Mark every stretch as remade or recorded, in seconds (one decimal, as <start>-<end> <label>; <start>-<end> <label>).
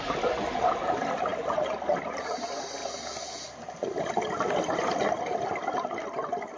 0.0-6.6 recorded